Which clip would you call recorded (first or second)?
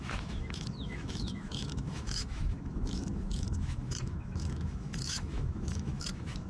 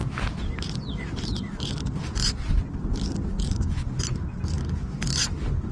second